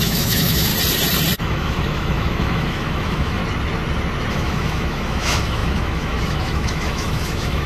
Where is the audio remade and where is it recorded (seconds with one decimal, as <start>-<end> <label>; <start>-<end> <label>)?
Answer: 0.0-0.7 remade; 0.7-1.4 recorded; 1.4-3.4 remade; 3.4-4.3 recorded; 4.3-7.7 remade

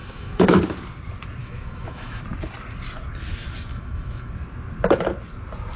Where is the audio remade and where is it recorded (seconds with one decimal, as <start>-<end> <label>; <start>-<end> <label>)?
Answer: 0.0-0.6 remade; 0.6-1.4 recorded; 1.4-2.2 remade; 2.2-3.7 recorded; 3.7-4.3 remade; 4.3-5.8 recorded